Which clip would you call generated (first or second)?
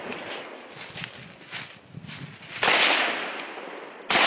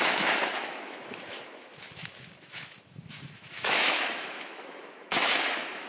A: second